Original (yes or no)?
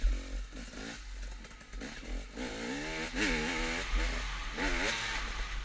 yes